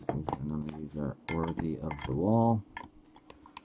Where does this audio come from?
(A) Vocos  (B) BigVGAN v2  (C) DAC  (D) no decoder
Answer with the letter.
D